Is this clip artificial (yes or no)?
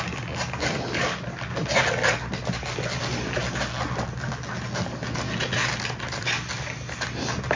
no